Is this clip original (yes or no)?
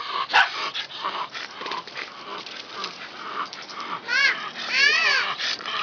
no